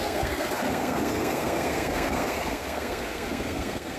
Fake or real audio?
fake